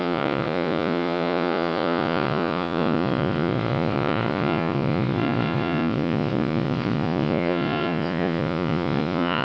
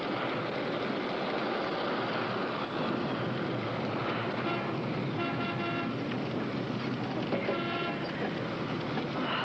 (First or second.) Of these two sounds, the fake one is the first